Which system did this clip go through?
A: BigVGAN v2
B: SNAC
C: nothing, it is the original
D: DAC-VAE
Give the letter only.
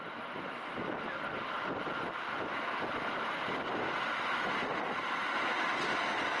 C